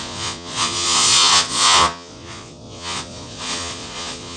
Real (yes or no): no